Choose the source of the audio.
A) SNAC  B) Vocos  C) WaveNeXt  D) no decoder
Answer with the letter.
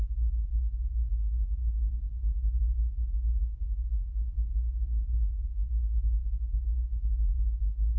D